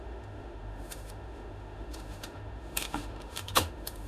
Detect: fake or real fake